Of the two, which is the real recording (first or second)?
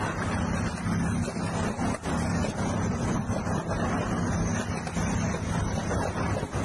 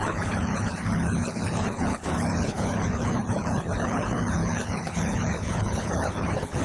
first